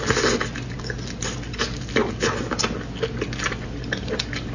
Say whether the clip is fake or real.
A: real